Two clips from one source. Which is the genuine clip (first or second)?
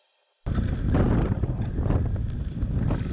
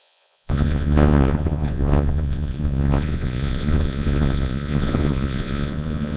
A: first